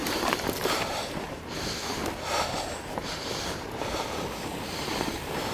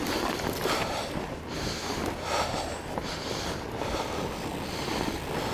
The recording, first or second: second